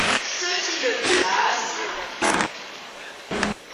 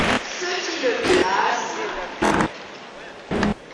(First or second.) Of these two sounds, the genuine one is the second